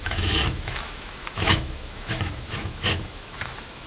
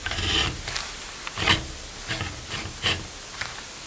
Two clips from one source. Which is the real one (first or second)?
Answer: second